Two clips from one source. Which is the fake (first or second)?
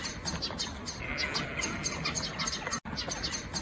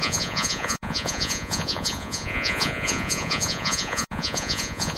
second